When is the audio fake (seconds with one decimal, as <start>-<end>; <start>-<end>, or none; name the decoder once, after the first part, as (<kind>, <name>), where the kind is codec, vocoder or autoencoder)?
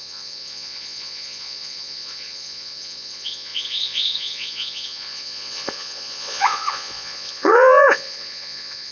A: 0.0-8.9 (vocoder, Vocos)